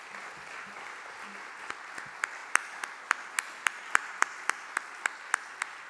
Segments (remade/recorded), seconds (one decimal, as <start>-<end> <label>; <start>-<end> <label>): 0.0-5.9 recorded